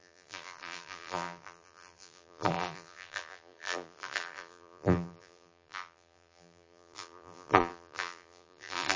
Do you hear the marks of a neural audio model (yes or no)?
yes